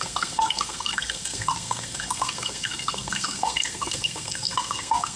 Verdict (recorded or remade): remade